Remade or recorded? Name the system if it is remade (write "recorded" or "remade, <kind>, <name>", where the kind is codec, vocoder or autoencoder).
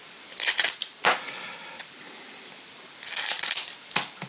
remade, vocoder, BigVGAN v2